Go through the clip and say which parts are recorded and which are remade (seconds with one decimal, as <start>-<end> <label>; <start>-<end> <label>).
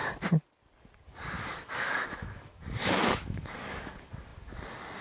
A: 0.0-1.5 recorded; 1.5-3.9 remade; 3.9-5.0 recorded